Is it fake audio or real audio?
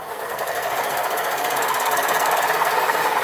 fake